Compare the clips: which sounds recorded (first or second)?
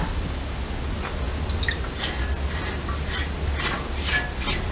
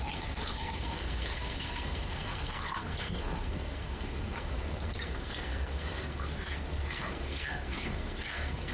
first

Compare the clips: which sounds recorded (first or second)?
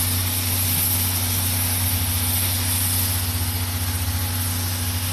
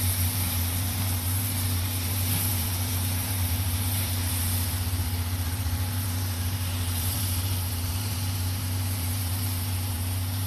first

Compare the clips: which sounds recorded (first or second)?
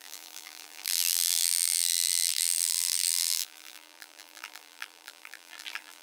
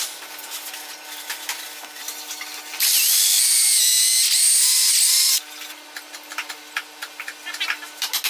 second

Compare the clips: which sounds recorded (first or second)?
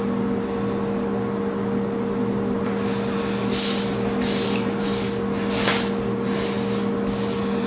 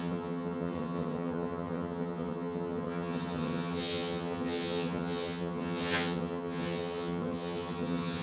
first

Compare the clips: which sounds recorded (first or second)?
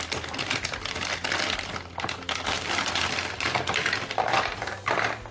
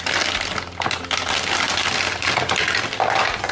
second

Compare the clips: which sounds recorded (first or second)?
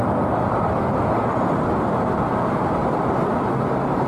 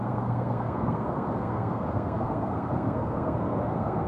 first